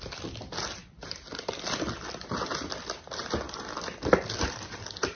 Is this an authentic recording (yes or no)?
yes